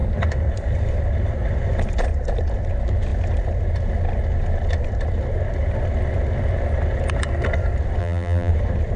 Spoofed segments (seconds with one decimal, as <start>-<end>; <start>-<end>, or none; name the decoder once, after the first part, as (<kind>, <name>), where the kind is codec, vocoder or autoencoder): 8.0-8.5 (vocoder, BigVGAN v2)